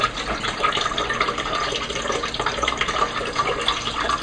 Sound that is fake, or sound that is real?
fake